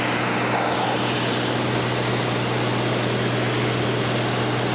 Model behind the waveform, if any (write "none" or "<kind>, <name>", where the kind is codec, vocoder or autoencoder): none